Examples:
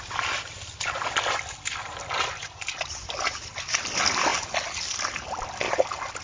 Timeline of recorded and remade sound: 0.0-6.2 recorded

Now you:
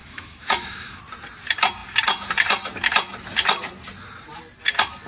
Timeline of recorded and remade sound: 0.0-1.0 remade; 1.0-5.1 recorded

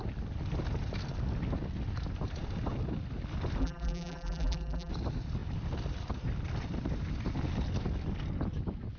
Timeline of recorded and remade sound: 0.0-3.6 recorded; 3.6-4.9 remade; 4.9-9.0 recorded

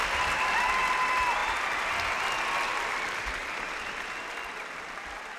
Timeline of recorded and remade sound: 0.0-0.8 remade; 0.8-1.4 recorded; 1.4-1.9 remade; 1.9-2.7 recorded; 2.7-3.3 remade; 3.3-5.4 recorded